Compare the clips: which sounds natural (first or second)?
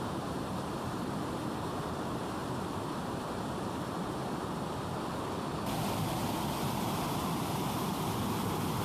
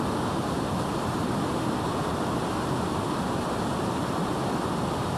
second